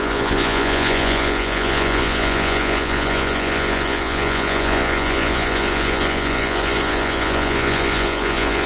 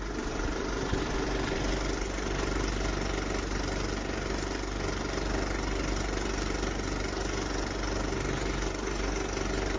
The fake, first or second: first